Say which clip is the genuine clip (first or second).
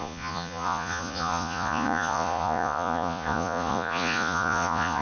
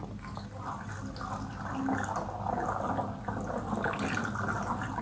second